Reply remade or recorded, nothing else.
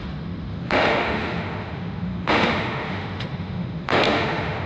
remade